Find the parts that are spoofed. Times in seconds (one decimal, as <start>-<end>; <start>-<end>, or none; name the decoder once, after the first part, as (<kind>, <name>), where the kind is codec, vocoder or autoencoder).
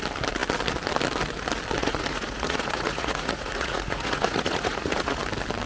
1.8-5.2 (vocoder, Vocos)